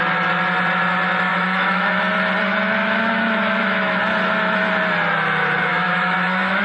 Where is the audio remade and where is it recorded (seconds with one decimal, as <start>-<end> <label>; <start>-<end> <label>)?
0.0-1.3 recorded; 1.3-2.0 remade; 2.0-2.8 recorded; 2.8-4.0 remade; 4.0-5.7 recorded; 5.7-6.6 remade